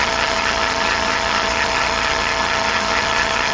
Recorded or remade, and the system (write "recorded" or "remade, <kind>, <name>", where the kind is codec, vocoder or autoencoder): remade, vocoder, HiFi-GAN